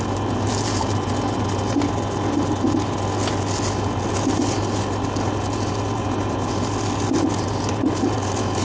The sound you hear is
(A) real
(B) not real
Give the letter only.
A